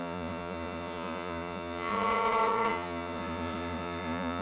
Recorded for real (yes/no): no